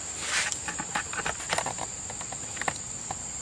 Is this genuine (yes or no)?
yes